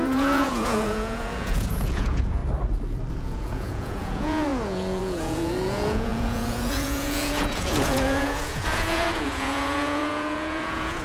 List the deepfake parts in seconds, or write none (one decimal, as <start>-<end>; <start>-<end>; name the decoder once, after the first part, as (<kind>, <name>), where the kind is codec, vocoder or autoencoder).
0.0-2.4 (vocoder, Vocos); 3.1-11.0